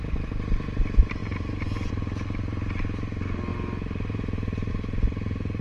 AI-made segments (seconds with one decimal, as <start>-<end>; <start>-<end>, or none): none